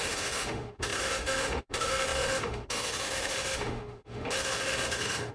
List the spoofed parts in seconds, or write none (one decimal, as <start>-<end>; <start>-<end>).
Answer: 0.0-5.3